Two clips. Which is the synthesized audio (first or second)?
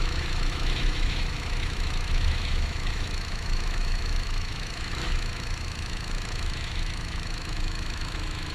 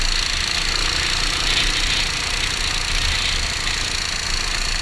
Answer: first